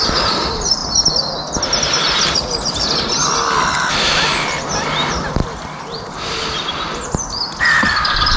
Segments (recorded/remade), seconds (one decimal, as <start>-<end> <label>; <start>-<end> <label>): 0.0-8.4 recorded